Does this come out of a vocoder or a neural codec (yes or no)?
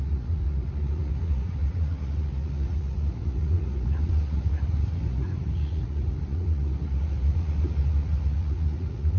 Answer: yes